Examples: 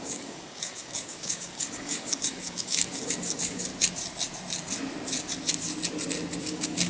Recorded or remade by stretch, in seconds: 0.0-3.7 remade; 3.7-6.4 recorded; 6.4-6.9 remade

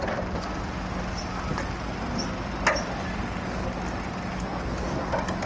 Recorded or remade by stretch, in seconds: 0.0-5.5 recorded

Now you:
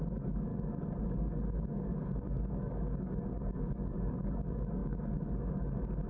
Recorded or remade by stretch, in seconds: 0.0-0.5 remade; 0.5-1.0 recorded; 1.0-6.1 remade

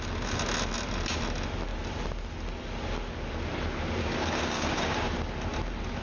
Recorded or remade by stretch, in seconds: 0.0-4.0 recorded; 4.0-5.1 remade; 5.1-6.0 recorded

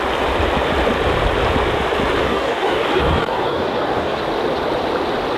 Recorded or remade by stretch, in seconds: 0.0-2.2 recorded; 2.2-4.2 remade; 4.2-5.4 recorded

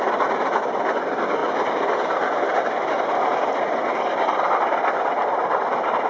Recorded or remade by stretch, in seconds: 0.0-6.1 recorded